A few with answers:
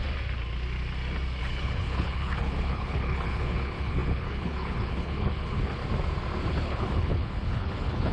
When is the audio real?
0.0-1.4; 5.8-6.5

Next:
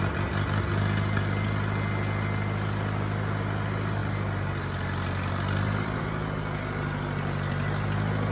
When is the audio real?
0.0-4.0; 6.0-8.3

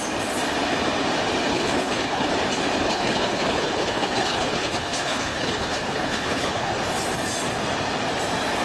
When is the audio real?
0.0-1.5; 2.3-2.8; 6.7-8.6

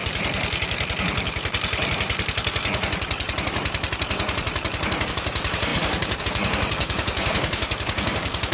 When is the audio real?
0.0-5.1

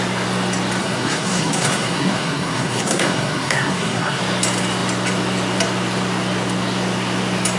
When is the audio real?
0.0-0.8; 4.2-7.6